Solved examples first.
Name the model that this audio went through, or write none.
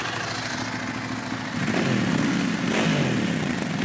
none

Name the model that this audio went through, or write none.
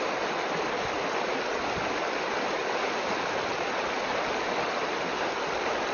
none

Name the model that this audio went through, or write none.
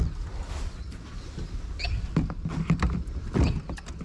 none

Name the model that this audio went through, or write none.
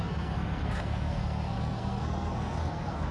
codec, SNAC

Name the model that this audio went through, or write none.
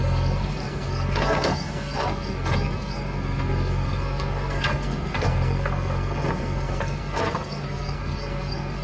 codec, SNAC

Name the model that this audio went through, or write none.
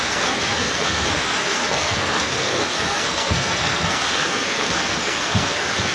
codec, SNAC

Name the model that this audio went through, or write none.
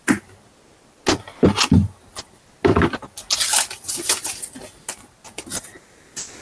none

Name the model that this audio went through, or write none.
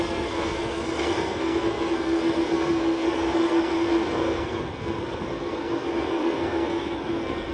codec, SNAC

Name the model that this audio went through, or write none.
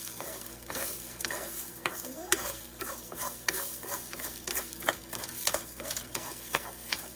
codec, SNAC